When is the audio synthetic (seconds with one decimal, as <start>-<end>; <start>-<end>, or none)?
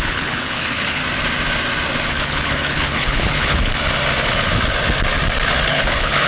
0.0-1.0; 2.1-3.7; 5.7-6.3